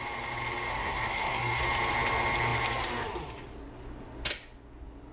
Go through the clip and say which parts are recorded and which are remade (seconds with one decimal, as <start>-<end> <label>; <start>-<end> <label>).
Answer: 0.0-0.7 recorded; 0.7-1.6 remade; 1.6-5.1 recorded

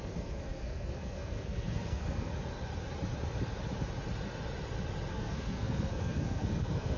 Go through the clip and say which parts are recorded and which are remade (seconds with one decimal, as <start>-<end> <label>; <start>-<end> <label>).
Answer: 0.0-2.3 remade; 2.3-5.1 recorded; 5.1-7.0 remade

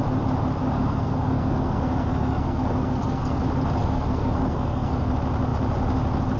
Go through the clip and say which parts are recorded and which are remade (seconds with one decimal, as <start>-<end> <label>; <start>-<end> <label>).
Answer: 0.0-0.6 recorded; 0.6-3.4 remade; 3.4-3.8 recorded; 3.8-5.1 remade; 5.1-6.4 recorded

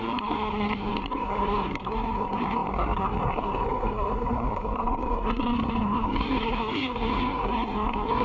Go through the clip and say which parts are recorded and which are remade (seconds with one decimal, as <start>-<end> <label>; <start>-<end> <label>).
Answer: 0.0-8.2 remade

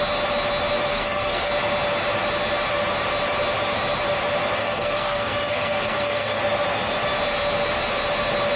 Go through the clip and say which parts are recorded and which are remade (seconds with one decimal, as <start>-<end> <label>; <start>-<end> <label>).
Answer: 0.0-0.9 recorded; 0.9-1.5 remade; 1.5-4.6 recorded; 4.6-6.4 remade; 6.4-8.6 recorded